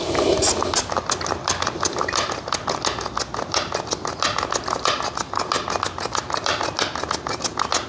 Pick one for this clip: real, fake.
real